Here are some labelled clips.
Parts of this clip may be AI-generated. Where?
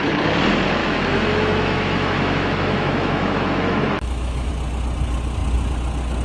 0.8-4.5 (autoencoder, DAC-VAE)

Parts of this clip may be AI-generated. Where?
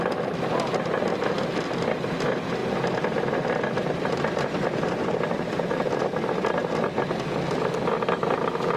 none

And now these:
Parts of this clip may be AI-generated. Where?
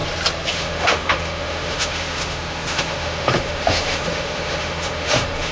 0.5-5.5 (autoencoder, DAC-VAE)